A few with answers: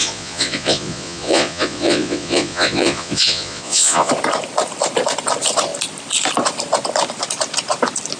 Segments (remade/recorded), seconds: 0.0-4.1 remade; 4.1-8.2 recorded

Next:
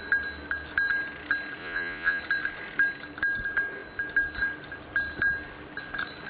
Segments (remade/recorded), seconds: 0.0-1.6 recorded; 1.6-2.2 remade; 2.2-6.3 recorded

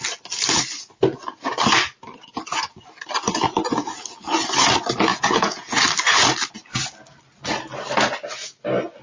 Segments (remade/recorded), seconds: 0.0-5.1 recorded; 5.1-5.8 remade; 5.8-9.0 recorded

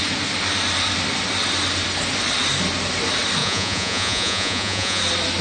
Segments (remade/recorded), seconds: 0.0-3.4 recorded; 3.4-5.0 remade; 5.0-5.4 recorded